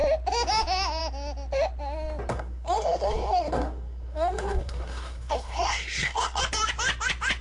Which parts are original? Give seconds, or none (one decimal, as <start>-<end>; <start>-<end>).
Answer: 0.0-2.3; 6.4-7.4